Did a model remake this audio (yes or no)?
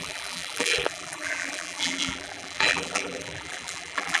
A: yes